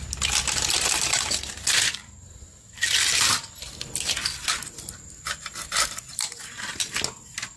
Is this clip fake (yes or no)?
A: no